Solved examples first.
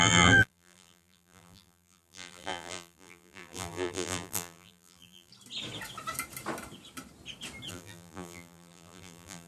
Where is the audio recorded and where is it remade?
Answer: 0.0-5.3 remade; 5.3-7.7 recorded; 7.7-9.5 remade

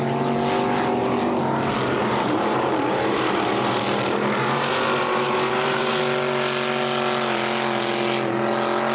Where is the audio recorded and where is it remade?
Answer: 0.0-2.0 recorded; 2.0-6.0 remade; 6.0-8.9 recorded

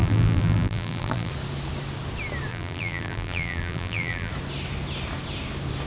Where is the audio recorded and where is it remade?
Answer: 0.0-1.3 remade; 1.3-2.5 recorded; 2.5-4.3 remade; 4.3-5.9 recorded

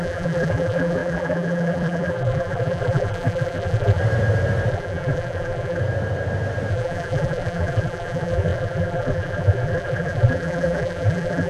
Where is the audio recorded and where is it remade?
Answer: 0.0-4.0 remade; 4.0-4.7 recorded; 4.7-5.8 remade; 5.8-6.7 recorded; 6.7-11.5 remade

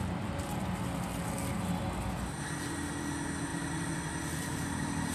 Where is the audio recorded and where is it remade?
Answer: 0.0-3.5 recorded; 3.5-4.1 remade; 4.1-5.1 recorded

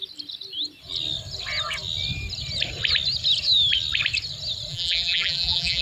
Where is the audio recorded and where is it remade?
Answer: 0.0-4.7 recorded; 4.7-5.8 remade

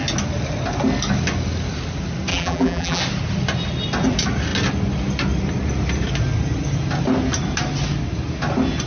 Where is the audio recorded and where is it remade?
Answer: 0.0-2.3 recorded; 2.3-3.0 remade; 3.0-8.9 recorded

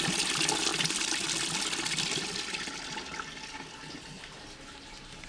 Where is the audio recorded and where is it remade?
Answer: 0.0-5.3 recorded